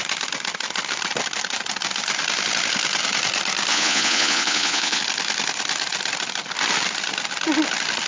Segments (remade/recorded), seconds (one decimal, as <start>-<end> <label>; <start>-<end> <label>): 0.0-3.7 recorded; 3.7-5.0 remade; 5.0-8.1 recorded